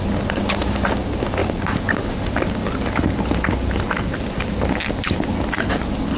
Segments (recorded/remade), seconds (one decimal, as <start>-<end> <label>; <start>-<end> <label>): 0.0-6.2 recorded